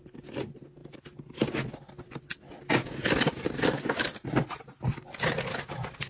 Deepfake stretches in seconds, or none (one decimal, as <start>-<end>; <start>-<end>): none